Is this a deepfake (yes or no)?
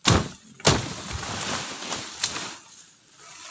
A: no